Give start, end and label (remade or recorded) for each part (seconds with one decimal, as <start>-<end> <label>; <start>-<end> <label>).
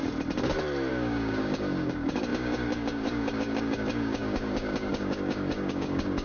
0.0-0.9 recorded; 0.9-6.2 remade